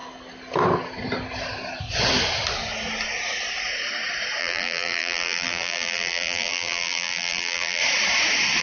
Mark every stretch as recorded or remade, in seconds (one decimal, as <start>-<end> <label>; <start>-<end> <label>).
0.0-4.4 recorded; 4.4-7.8 remade; 7.8-8.6 recorded